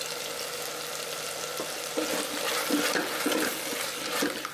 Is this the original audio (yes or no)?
yes